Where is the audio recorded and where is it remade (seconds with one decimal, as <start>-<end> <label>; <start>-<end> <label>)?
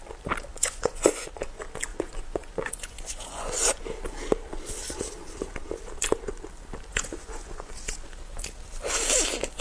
0.0-0.5 recorded; 0.5-1.3 remade; 1.3-1.9 recorded; 1.9-3.8 remade; 3.8-6.9 recorded; 6.9-7.7 remade; 7.7-9.6 recorded